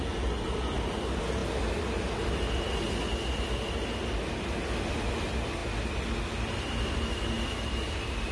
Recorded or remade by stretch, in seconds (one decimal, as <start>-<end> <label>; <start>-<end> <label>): 0.0-8.3 recorded

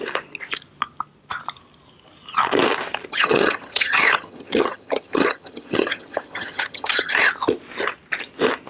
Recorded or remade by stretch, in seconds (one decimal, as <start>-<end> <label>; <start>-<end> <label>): 0.0-3.1 recorded; 3.1-7.3 remade; 7.3-8.7 recorded